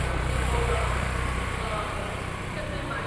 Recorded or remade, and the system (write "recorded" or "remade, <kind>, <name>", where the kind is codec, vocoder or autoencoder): remade, vocoder, BigVGAN v2